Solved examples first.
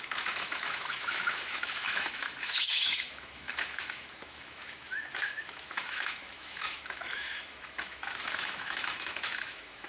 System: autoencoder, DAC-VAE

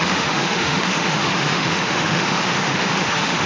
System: autoencoder, DAC-VAE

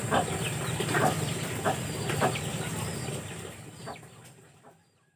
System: none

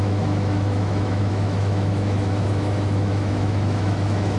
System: autoencoder, DAC-VAE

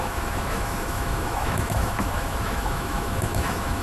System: autoencoder, DAC-VAE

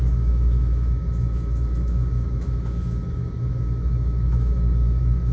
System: autoencoder, DAC-VAE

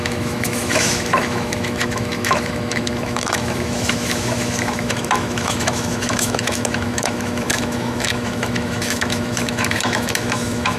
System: autoencoder, DAC-VAE